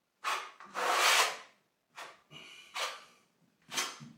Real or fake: real